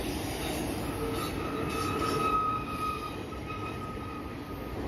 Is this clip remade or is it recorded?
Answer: recorded